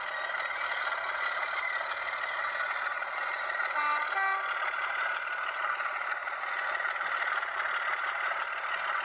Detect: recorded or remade recorded